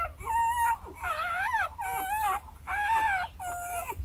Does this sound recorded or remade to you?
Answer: recorded